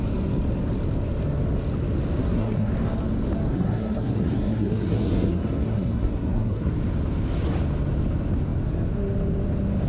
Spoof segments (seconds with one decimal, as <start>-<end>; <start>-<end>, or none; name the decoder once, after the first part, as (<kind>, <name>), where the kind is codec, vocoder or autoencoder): 2.2-2.7 (codec, SNAC); 3.5-6.7